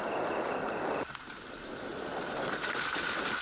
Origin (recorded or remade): recorded